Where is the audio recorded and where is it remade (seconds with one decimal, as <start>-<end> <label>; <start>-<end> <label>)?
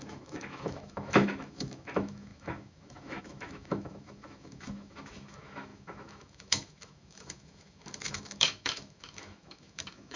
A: 0.0-10.2 remade